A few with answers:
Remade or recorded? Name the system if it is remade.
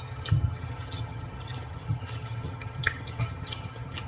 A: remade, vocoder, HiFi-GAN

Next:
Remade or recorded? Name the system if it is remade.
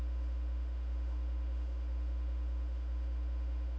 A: remade, autoencoder, DAC-VAE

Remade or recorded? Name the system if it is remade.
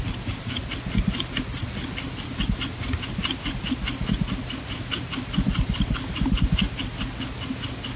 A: recorded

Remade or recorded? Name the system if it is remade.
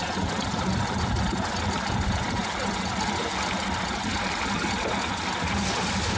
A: recorded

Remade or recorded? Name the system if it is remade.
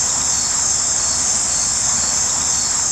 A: recorded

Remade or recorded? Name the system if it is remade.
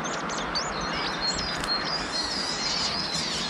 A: recorded